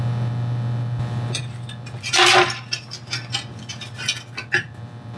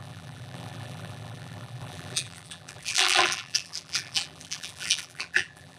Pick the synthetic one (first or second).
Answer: second